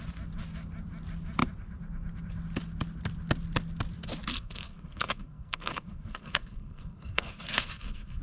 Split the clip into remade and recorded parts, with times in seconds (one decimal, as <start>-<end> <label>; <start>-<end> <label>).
0.0-4.3 recorded; 4.3-8.2 remade